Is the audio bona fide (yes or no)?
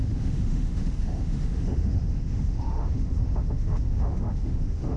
no